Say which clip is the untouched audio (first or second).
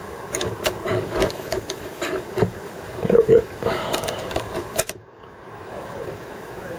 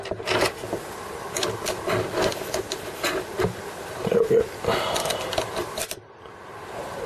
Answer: second